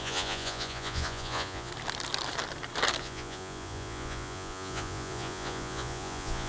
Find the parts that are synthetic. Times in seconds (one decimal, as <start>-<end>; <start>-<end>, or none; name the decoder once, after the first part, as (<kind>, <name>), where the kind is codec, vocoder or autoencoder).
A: 0.0-1.7 (vocoder, Vocos); 3.0-6.5